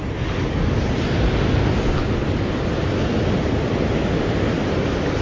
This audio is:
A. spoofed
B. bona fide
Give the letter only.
B